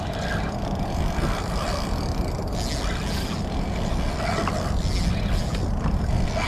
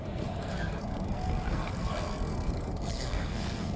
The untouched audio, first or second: first